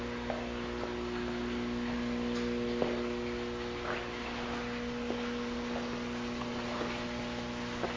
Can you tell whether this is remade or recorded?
recorded